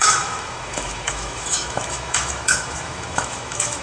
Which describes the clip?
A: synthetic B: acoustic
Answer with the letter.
A